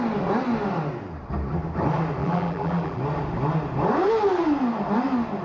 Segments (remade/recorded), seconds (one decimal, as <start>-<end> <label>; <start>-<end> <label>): 0.0-2.2 recorded; 2.2-3.0 remade; 3.0-5.4 recorded